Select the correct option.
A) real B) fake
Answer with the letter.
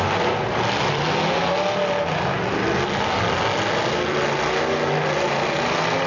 A